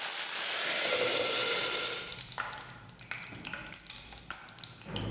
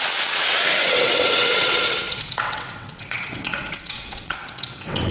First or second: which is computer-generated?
second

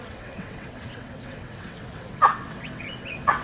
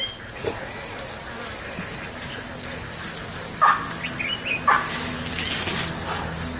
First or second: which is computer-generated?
first